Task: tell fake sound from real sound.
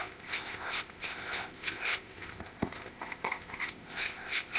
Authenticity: fake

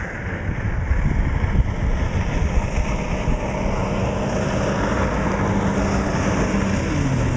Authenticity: real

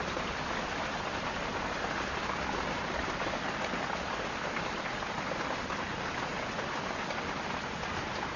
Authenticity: real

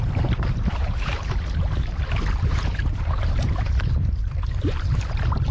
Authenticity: fake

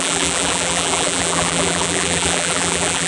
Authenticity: fake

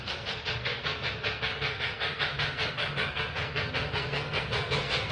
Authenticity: fake